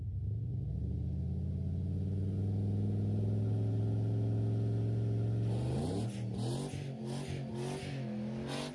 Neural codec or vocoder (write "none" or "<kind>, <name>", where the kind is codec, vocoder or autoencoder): none